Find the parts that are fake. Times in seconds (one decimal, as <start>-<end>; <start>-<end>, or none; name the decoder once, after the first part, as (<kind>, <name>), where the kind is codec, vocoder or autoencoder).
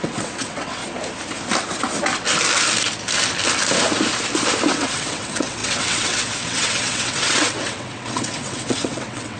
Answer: 0.0-0.8 (vocoder, WaveNeXt); 4.7-9.4